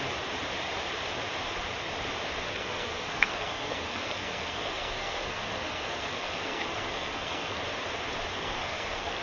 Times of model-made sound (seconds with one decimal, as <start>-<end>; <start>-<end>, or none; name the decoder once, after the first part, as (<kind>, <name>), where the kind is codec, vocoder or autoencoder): 2.5-7.6 (codec, SNAC); 8.3-9.2